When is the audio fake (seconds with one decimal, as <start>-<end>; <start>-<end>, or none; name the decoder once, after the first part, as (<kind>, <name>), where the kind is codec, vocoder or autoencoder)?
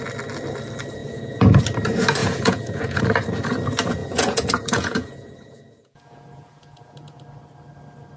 1.0-1.6 (vocoder, Vocos); 2.2-3.0; 4.0-7.2